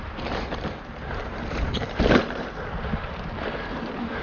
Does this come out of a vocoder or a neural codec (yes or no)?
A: yes